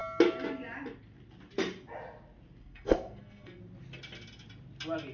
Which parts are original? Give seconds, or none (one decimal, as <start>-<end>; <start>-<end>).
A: 0.0-2.6; 3.6-5.1